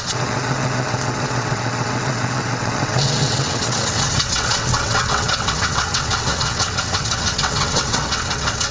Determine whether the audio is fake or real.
fake